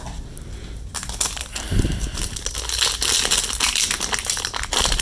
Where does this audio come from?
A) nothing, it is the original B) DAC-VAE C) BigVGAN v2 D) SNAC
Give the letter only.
A